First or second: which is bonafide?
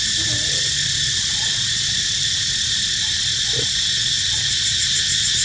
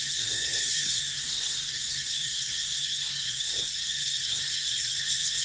first